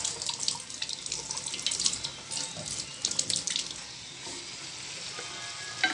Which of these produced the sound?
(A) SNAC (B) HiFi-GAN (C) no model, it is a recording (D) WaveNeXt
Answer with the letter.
C